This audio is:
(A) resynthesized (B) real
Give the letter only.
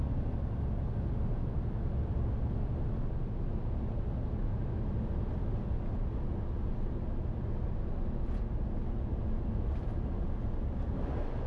B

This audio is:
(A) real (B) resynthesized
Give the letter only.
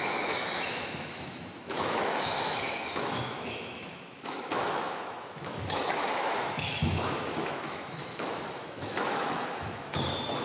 B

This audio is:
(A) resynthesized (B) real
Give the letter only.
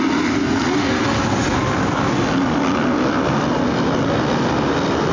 B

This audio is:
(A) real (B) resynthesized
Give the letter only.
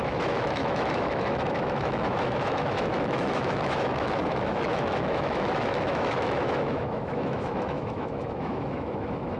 B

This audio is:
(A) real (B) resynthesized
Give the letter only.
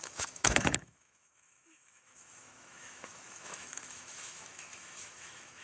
B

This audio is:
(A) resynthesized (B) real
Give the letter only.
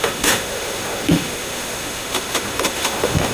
A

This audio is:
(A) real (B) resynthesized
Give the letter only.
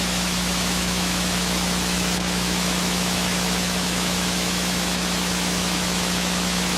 B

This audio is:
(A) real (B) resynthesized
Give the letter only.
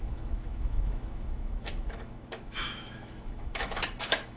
B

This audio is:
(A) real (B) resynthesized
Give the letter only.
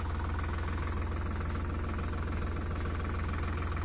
A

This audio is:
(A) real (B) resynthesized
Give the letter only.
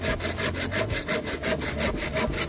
A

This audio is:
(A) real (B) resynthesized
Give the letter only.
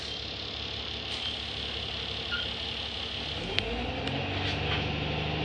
A